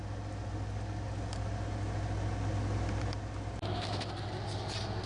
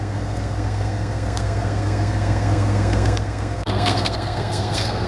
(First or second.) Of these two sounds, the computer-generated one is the second